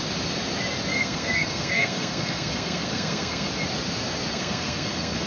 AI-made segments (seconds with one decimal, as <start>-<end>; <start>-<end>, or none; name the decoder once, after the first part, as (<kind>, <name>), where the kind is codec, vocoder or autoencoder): 0.9-3.5 (codec, SNAC); 4.3-5.3